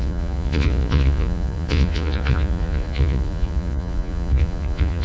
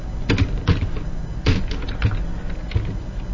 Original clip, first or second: second